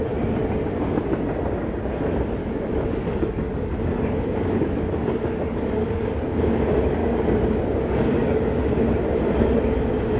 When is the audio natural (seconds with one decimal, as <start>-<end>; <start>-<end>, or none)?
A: 0.0-2.4; 6.5-7.0; 8.4-10.2